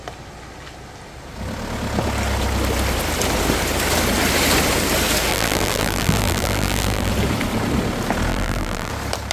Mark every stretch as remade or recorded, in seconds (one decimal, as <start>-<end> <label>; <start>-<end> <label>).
0.0-5.3 recorded; 5.3-7.1 remade; 7.1-8.3 recorded; 8.3-8.9 remade; 8.9-9.3 recorded